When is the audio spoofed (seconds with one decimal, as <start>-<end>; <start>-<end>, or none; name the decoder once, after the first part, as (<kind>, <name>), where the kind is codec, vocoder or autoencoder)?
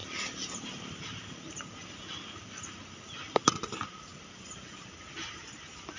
none